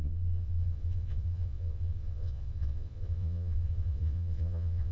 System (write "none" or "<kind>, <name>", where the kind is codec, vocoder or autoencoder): vocoder, Vocos